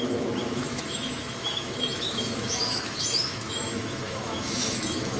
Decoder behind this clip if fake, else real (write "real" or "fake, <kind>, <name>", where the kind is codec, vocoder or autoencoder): fake, autoencoder, DAC-VAE